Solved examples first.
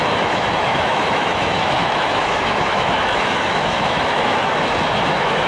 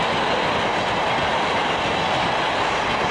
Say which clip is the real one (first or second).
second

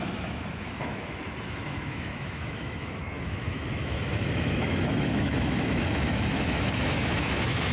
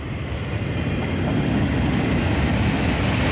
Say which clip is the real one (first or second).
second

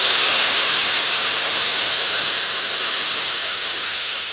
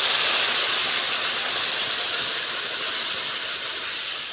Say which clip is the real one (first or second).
second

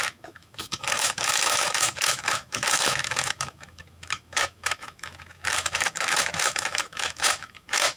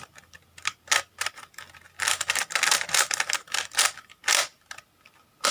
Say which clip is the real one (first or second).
second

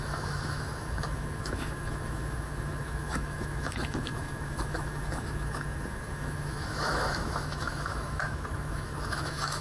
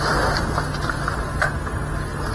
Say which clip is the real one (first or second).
second